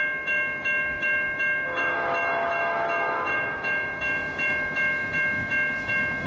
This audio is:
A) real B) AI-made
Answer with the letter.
B